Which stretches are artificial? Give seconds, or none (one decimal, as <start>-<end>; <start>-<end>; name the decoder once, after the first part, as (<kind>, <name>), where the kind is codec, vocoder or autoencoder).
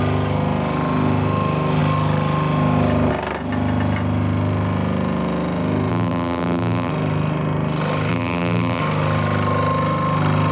5.9-6.9 (vocoder, BigVGAN v2); 8.1-8.8